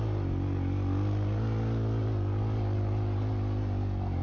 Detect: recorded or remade recorded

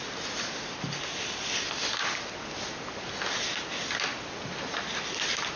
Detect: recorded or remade recorded